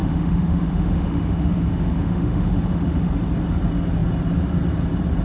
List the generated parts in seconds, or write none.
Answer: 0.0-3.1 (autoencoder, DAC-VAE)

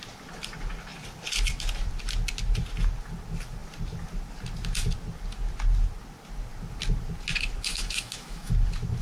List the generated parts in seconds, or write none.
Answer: 7.7-8.5 (autoencoder, DAC-VAE)

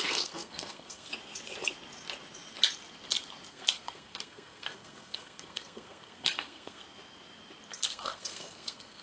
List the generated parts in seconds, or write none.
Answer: 0.0-1.1 (codec, SNAC); 3.5-6.8; 7.7-9.0

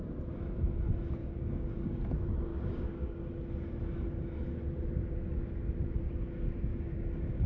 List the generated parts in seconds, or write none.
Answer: 1.2-2.0 (codec, DAC); 2.5-3.2; 6.7-7.5

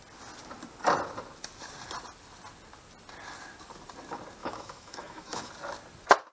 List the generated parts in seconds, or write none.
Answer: 4.4-5.5 (autoencoder, DAC-VAE)

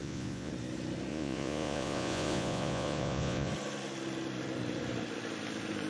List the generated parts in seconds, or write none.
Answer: 0.0-0.5 (vocoder, Vocos); 1.1-3.5

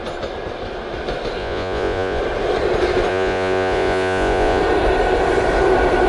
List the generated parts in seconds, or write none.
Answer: 1.4-2.2 (vocoder, Vocos); 3.1-4.6